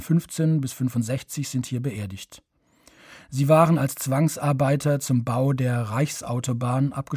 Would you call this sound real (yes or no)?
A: yes